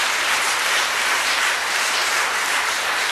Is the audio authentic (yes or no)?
no